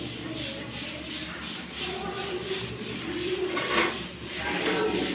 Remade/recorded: remade